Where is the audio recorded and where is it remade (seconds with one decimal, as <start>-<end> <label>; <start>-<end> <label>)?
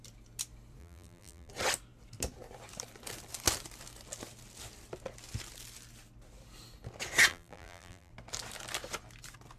0.0-0.8 recorded; 0.8-1.5 remade; 1.5-7.3 recorded; 7.3-8.1 remade; 8.1-9.6 recorded